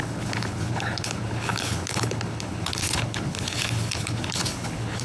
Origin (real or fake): fake